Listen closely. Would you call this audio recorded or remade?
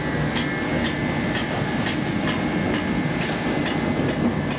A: recorded